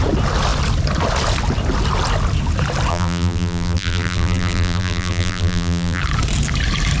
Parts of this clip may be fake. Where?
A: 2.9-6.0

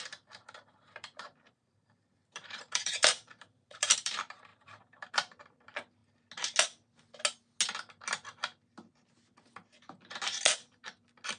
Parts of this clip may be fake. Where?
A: 0.0-6.0

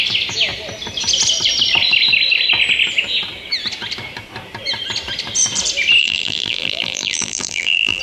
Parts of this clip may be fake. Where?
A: 6.0-8.0

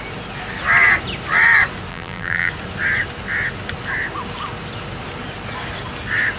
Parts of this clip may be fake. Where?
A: 1.9-2.5

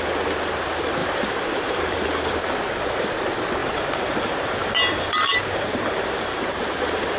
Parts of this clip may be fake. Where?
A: 1.0-2.3; 3.6-7.2